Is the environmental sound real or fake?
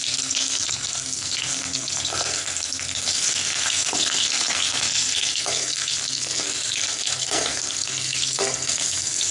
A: fake